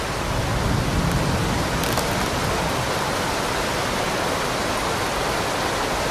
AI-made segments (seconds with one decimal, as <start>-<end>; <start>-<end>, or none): none

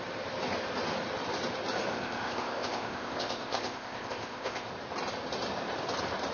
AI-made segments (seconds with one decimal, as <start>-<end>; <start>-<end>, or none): 1.9-4.7

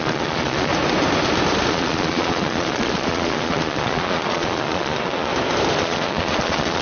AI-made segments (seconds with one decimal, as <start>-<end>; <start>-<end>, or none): 0.0-0.7; 1.7-5.3; 5.8-6.8

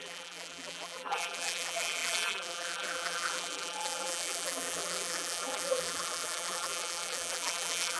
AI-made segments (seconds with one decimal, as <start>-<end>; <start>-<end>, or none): 0.0-8.0

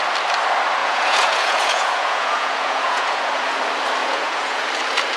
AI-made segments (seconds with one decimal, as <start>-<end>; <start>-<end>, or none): 0.8-3.6; 4.0-4.7

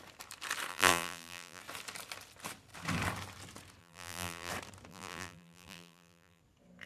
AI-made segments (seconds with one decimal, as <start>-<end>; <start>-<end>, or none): 0.7-1.6; 3.8-4.5; 4.9-6.4